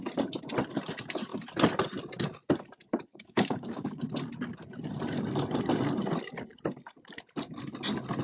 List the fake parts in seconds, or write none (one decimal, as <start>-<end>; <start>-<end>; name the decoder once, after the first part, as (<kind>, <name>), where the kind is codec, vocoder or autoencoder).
3.1-4.0 (codec, DAC)